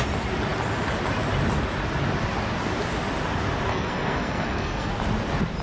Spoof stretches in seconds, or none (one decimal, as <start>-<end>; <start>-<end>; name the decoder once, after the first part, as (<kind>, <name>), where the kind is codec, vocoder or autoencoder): 3.7-4.9 (codec, SNAC)